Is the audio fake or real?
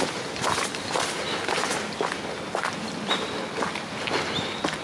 real